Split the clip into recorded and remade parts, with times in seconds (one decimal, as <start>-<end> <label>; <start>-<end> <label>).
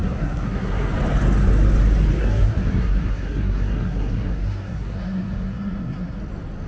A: 0.0-0.9 remade; 0.9-2.2 recorded; 2.2-6.2 remade; 6.2-6.7 recorded